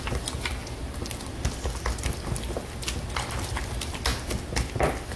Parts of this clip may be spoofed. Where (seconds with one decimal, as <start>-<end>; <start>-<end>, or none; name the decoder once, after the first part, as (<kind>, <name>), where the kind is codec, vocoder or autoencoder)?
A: none